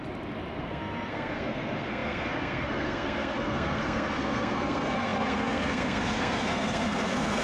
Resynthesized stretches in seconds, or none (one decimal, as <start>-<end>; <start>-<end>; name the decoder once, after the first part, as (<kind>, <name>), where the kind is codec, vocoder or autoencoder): 0.6-7.4 (codec, SNAC)